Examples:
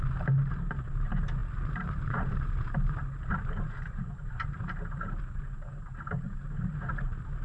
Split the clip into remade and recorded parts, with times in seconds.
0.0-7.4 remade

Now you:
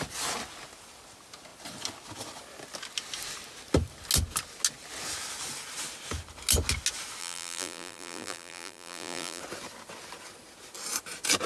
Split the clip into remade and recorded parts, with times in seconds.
0.0-7.2 recorded; 7.2-9.4 remade; 9.4-11.5 recorded

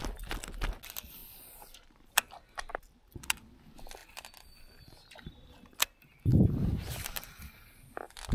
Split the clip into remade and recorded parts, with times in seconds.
0.0-1.2 recorded; 1.2-1.9 remade; 1.9-6.3 recorded; 6.3-7.9 remade; 7.9-8.3 recorded

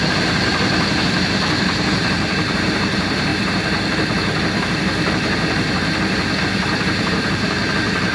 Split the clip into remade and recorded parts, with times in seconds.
0.0-3.3 remade; 3.3-6.4 recorded; 6.4-7.6 remade; 7.6-8.1 recorded

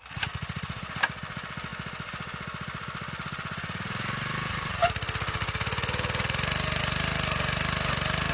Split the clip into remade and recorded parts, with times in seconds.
0.0-8.3 recorded

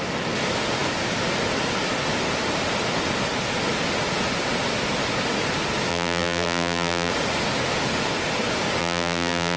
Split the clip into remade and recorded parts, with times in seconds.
0.0-5.9 recorded; 5.9-7.1 remade; 7.1-8.8 recorded; 8.8-9.6 remade